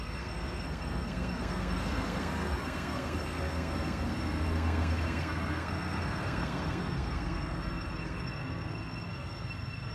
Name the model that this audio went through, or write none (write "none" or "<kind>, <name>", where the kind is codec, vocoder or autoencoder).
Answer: codec, SNAC